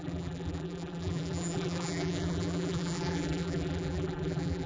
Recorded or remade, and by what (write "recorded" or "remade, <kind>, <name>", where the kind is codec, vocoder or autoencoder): remade, vocoder, BigVGAN v2